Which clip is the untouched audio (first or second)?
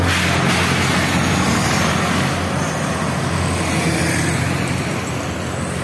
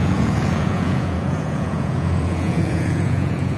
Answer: first